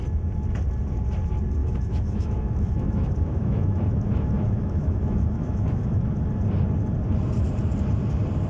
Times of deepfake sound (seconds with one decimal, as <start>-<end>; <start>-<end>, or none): 1.6-6.2